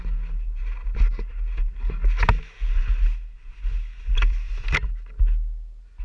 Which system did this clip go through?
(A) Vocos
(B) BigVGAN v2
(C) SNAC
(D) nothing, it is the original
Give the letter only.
D